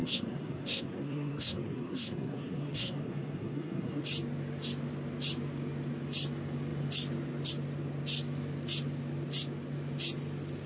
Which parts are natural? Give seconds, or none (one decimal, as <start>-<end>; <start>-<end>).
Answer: 4.0-10.7